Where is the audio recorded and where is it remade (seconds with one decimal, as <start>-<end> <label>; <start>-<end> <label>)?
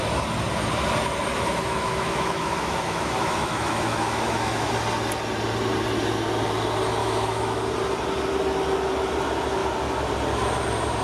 0.0-1.3 recorded; 1.3-4.7 remade; 4.7-7.0 recorded; 7.0-7.6 remade; 7.6-11.0 recorded